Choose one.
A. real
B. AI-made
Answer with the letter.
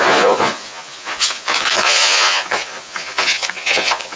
B